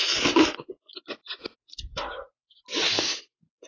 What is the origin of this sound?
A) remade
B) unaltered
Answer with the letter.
B